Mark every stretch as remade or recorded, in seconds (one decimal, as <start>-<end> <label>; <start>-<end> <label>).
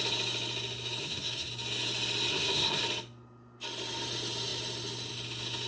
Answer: 0.0-1.0 recorded; 1.0-1.5 remade; 1.5-2.3 recorded; 2.3-2.8 remade; 2.8-5.7 recorded